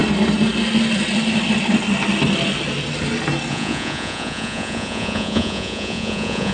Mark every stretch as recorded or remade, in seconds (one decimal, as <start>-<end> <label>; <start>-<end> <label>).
0.0-3.5 recorded; 3.5-6.5 remade